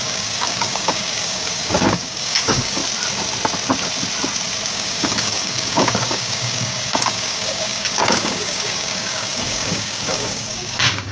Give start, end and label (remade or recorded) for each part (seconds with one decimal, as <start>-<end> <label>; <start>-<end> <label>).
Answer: 0.0-2.8 remade; 2.8-4.7 recorded; 4.7-11.1 remade